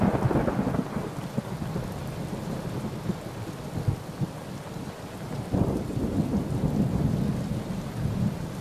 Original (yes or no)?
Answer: yes